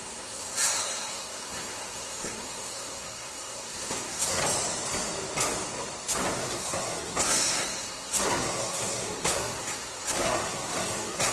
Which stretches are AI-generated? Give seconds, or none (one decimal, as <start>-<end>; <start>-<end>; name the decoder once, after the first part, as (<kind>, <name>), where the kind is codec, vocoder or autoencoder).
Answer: 0.0-4.4 (codec, SNAC); 6.4-11.3

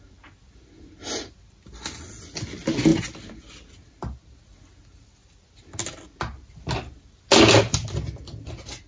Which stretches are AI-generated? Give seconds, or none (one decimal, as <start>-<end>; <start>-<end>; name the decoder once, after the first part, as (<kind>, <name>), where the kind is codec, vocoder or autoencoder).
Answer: none

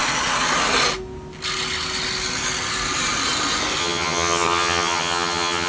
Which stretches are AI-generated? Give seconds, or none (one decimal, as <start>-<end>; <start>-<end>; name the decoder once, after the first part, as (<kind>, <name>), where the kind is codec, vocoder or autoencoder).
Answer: 3.8-5.7 (vocoder, HiFi-GAN)

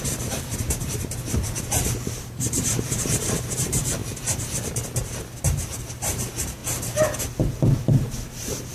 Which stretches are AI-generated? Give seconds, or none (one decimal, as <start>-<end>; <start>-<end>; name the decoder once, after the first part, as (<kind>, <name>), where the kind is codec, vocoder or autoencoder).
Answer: 0.0-4.0 (vocoder, BigVGAN v2); 5.4-6.6; 7.9-8.7

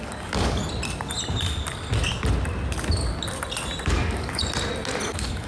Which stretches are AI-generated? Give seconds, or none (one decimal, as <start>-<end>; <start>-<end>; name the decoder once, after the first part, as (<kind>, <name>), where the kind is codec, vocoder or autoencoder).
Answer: 0.0-0.6 (codec, DAC); 3.9-4.4; 5.1-5.5

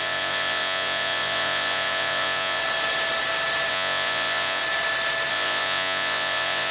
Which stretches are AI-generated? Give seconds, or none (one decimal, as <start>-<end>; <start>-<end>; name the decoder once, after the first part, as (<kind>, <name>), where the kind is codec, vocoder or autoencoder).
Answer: 0.0-2.6 (vocoder, Vocos); 3.7-4.6; 5.3-6.7

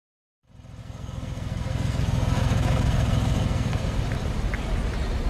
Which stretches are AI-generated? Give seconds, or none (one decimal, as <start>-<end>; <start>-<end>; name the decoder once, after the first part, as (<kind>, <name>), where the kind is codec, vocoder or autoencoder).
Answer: 0.8-4.0 (codec, SNAC)